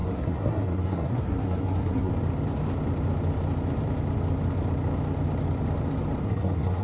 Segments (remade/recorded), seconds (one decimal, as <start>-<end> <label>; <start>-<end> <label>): 0.0-2.1 remade; 2.1-6.2 recorded; 6.2-6.8 remade